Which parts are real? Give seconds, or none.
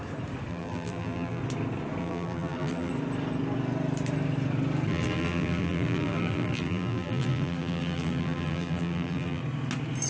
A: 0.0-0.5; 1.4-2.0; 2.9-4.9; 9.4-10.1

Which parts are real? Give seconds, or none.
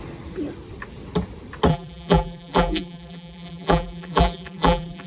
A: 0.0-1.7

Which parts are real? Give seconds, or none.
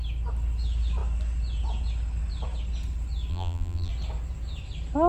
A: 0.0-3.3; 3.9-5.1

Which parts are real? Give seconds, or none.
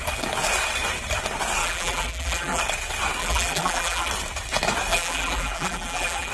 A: 0.0-1.6; 2.6-3.2; 4.1-4.9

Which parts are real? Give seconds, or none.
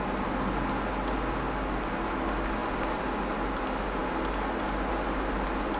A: 0.0-5.8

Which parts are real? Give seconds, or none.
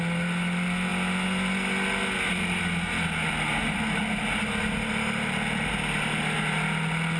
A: 0.0-7.2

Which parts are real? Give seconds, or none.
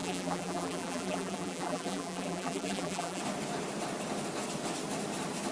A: 3.2-5.5